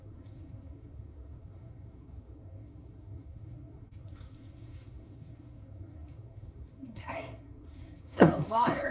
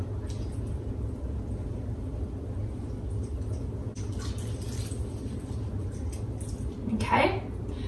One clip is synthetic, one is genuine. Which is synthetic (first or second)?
first